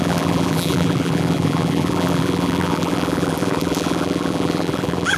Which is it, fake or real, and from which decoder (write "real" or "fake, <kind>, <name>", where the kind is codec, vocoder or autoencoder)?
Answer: fake, vocoder, BigVGAN v2